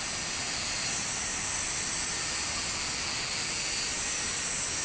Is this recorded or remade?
recorded